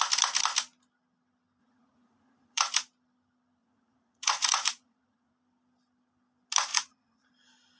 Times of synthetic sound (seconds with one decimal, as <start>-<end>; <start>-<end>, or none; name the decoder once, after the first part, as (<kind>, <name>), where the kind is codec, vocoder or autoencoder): 1.6-2.6 (vocoder, Vocos); 3.6-5.3; 6.7-7.3

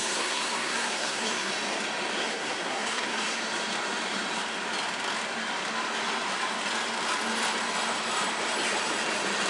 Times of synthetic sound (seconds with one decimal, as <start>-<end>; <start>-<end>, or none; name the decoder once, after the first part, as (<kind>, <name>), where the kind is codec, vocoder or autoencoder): 0.0-1.5 (codec, SNAC); 2.2-3.4